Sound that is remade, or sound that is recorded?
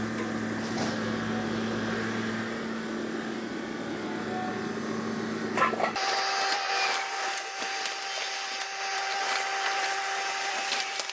recorded